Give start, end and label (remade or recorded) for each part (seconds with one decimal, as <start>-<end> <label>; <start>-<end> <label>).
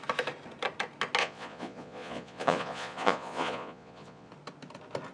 0.0-1.2 recorded; 1.2-4.3 remade; 4.3-5.1 recorded